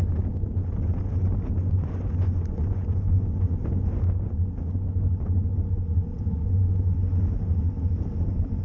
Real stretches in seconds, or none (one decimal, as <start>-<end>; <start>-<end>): 0.0-1.6; 3.6-8.6